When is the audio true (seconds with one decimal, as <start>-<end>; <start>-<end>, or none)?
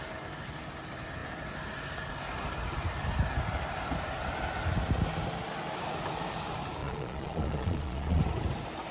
0.0-6.8; 8.2-8.9